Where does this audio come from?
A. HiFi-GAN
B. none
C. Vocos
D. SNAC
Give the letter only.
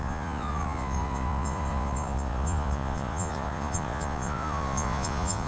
C